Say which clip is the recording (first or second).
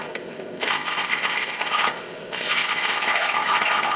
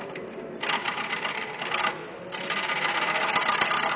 second